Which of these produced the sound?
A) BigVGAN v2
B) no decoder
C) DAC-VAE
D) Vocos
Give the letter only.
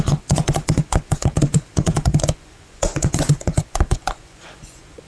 D